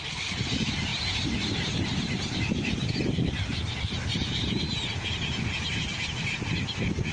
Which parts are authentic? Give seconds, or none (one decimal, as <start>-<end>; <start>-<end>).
0.0-7.1